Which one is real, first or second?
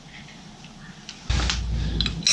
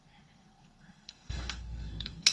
first